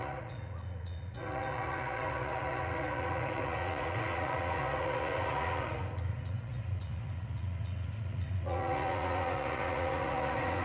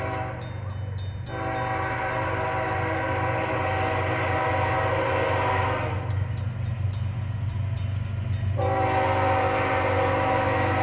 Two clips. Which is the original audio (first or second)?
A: second